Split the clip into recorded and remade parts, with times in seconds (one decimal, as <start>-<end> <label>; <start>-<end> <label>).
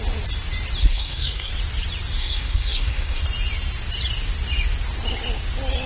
0.0-0.8 recorded; 0.8-1.5 remade; 1.5-2.2 recorded; 2.2-3.2 remade; 3.2-5.9 recorded